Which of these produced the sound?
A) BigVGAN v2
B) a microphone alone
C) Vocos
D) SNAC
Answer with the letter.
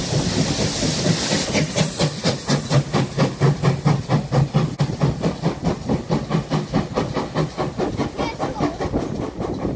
B